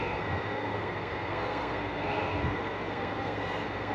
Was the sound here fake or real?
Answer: fake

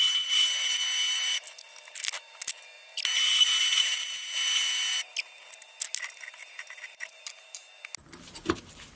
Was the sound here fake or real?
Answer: real